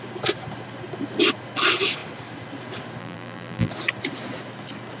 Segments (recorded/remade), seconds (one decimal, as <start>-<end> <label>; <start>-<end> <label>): 0.0-3.0 recorded; 3.0-3.7 remade; 3.7-5.0 recorded